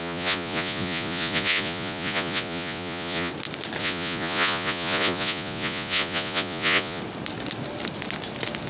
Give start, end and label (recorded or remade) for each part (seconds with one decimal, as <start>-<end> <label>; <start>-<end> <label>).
0.0-3.3 remade; 3.3-3.8 recorded; 3.8-7.0 remade; 7.0-8.7 recorded

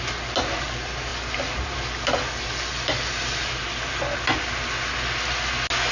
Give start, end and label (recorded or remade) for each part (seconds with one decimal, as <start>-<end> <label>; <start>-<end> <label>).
0.0-5.9 recorded

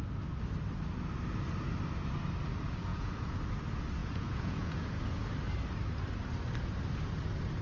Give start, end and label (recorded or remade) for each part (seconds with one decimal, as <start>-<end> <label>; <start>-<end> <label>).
0.0-2.9 recorded; 2.9-3.4 remade; 3.4-4.0 recorded; 4.0-5.3 remade; 5.3-7.6 recorded

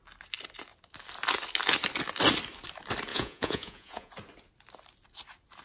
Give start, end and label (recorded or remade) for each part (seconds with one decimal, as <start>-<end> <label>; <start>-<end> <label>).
0.0-3.1 recorded; 3.1-4.1 remade; 4.1-5.6 recorded

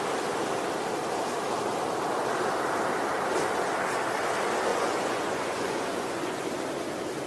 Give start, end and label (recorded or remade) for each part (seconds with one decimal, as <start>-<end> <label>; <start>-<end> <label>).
0.0-4.7 recorded; 4.7-6.5 remade; 6.5-7.3 recorded

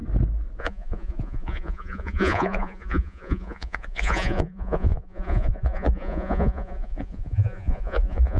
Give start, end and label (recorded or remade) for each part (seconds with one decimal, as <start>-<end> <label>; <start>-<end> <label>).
0.0-0.6 recorded; 0.6-8.4 remade

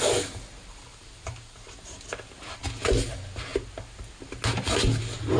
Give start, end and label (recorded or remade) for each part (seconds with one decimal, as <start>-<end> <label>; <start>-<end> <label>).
0.0-5.4 recorded